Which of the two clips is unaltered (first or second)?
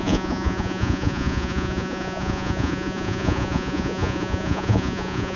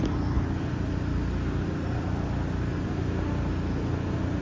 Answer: second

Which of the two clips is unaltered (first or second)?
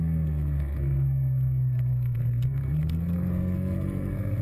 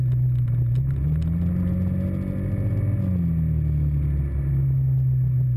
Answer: second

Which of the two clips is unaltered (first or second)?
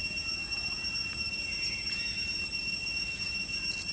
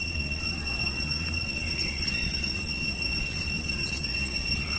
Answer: first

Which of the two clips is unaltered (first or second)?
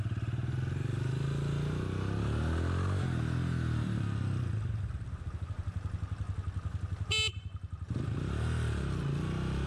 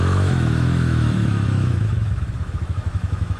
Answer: first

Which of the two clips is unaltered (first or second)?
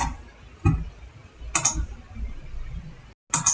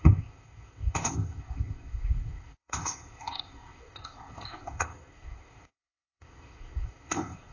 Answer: first